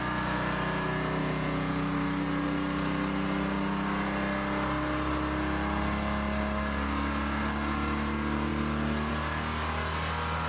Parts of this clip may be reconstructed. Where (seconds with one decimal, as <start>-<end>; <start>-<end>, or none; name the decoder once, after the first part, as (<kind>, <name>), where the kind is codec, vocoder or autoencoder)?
1.2-1.7 (vocoder, Vocos)